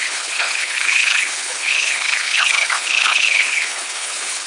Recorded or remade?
remade